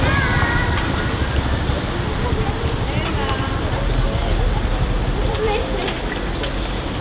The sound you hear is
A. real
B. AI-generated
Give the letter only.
A